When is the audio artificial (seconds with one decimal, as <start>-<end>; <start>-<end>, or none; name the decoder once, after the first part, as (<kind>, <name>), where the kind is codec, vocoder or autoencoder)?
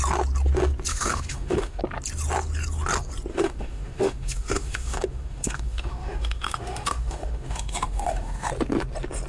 0.9-1.8 (autoencoder, DAC-VAE); 3.3-8.5